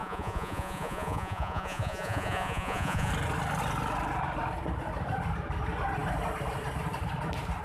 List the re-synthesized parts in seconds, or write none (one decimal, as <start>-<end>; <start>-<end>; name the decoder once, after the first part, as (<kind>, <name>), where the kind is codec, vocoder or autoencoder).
0.0-3.1 (vocoder, Vocos)